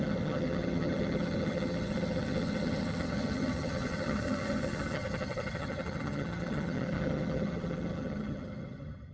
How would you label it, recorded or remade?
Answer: remade